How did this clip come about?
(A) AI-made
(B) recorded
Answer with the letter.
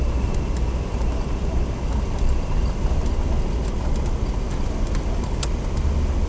B